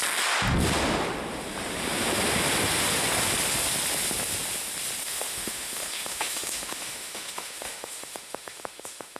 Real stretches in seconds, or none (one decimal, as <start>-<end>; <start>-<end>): 0.0-5.0